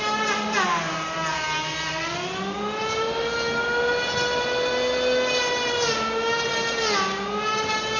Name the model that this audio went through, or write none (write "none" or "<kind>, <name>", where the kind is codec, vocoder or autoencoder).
none